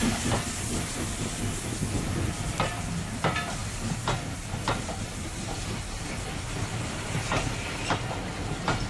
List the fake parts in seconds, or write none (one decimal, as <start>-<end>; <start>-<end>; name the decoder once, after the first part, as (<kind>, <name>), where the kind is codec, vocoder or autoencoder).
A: none